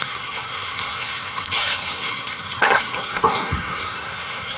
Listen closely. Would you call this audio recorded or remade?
remade